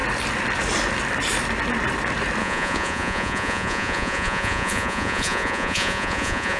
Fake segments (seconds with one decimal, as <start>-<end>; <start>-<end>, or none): 2.4-6.6